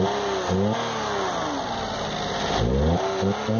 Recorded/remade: recorded